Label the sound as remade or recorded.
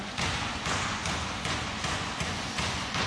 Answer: remade